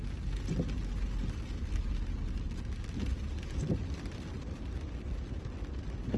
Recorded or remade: recorded